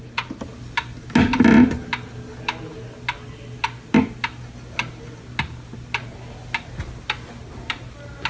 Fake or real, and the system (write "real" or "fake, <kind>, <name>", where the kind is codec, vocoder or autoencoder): real